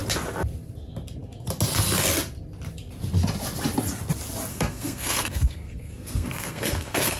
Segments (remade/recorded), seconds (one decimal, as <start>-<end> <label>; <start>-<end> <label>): 0.0-4.5 recorded; 4.5-7.2 remade